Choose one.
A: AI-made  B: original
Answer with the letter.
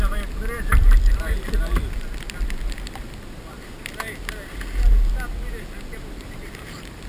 B